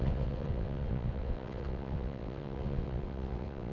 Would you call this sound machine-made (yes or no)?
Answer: yes